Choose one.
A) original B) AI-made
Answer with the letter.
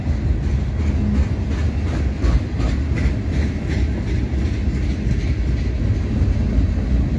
A